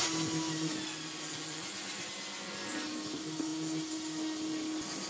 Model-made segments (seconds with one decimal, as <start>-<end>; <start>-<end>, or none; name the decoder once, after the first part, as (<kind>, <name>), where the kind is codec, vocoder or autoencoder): none